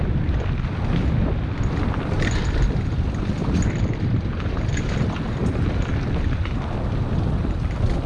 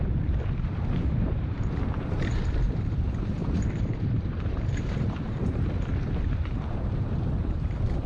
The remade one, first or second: second